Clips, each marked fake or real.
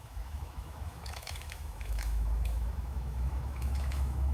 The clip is fake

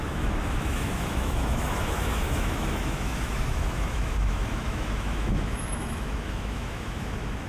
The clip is fake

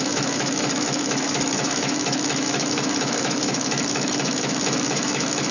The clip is fake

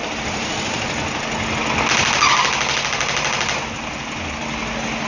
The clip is real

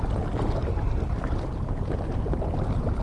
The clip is real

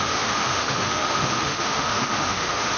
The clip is fake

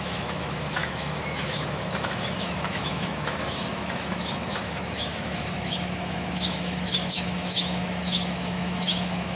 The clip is fake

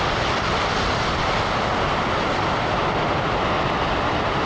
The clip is real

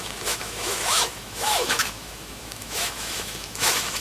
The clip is fake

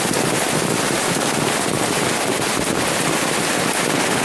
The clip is real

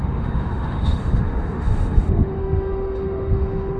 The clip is fake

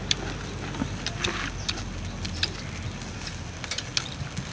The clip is real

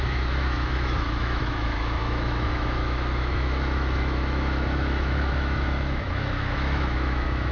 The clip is fake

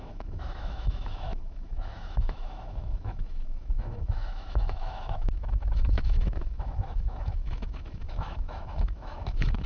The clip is fake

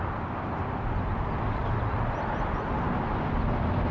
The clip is real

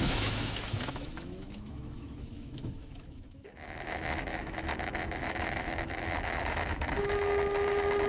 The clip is fake